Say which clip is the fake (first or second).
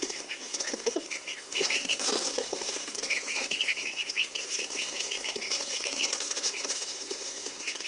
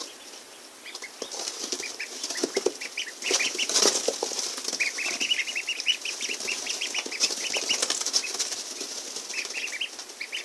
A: first